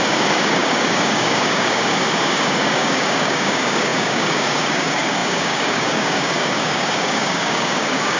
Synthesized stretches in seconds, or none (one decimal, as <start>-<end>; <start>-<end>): 0.0-8.2